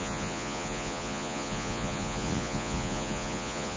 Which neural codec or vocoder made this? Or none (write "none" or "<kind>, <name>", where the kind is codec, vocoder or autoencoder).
vocoder, Vocos